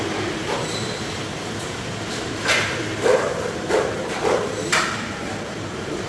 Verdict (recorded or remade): remade